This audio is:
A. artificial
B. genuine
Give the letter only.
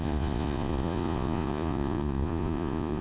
A